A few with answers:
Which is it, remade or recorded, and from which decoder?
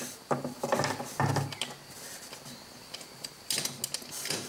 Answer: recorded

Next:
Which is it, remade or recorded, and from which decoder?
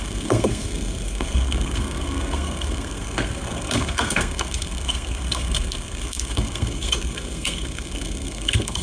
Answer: remade, codec, SNAC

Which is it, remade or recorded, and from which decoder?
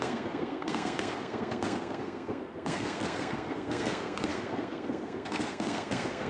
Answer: remade, codec, SNAC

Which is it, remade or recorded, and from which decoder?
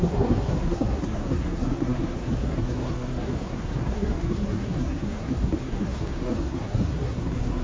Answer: remade, codec, SNAC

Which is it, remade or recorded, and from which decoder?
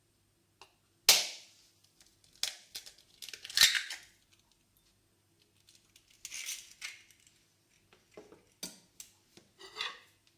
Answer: recorded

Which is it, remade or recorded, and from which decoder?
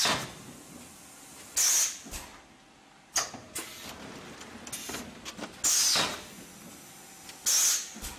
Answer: recorded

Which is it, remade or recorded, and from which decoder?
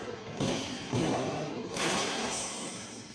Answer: remade, codec, SNAC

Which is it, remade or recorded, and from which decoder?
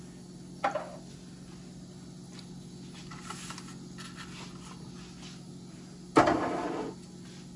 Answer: recorded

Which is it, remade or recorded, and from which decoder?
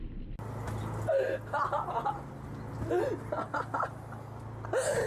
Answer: recorded